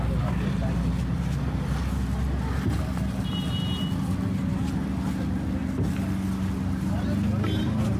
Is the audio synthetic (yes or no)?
no